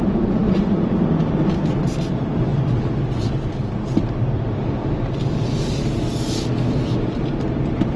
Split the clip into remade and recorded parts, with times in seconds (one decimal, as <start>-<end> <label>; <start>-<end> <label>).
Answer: 0.0-8.0 recorded